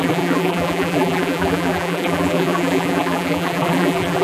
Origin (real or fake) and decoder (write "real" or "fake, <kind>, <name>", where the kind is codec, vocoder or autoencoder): fake, vocoder, BigVGAN v2